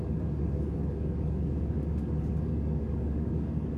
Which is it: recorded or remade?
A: remade